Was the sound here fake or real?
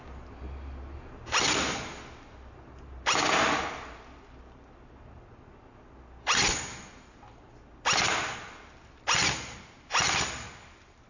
real